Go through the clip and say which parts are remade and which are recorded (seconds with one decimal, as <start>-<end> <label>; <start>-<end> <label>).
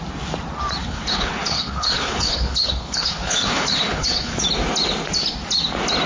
0.0-0.8 recorded; 0.8-4.4 remade; 4.4-6.1 recorded